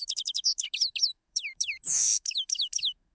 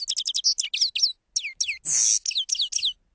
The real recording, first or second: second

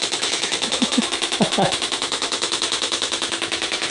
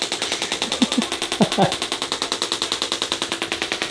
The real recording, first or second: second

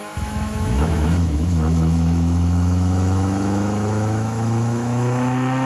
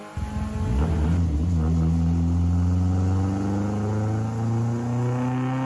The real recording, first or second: second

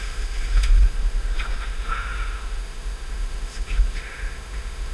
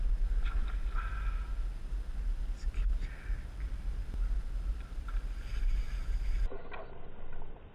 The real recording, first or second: second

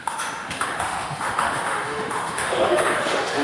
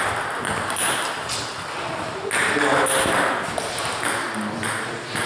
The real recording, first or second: second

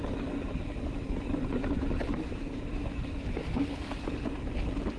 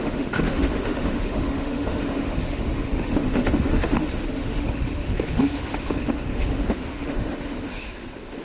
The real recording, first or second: first